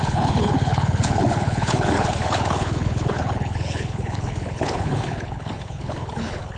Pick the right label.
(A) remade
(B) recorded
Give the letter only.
A